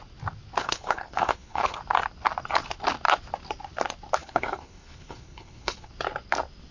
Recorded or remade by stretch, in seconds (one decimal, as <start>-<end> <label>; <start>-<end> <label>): 0.0-0.6 recorded; 0.6-1.8 remade; 1.8-4.2 recorded; 4.2-5.9 remade; 5.9-6.7 recorded